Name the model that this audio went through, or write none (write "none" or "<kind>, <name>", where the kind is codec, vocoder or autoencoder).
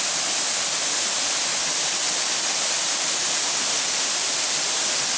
none